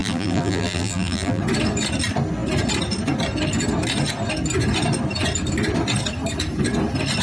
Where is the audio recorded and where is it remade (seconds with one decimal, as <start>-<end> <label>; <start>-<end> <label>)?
0.0-1.4 remade; 1.4-7.2 recorded